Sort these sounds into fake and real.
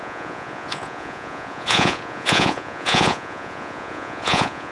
fake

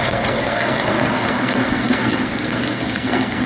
fake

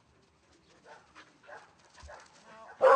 real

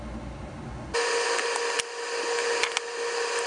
real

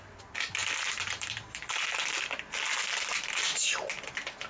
real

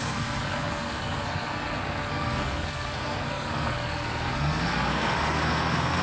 fake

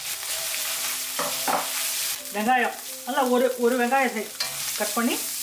real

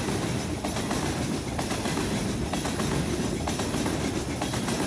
real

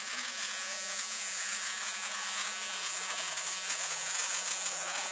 fake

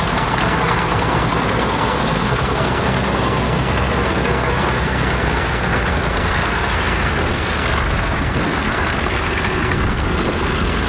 fake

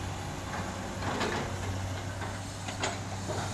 real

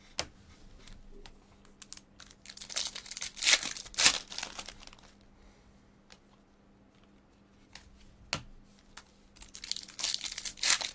real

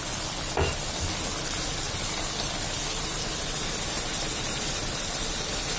real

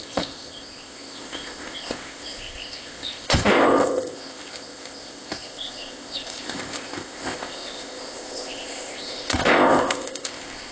fake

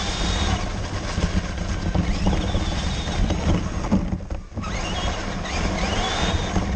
real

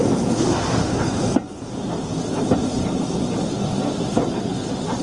real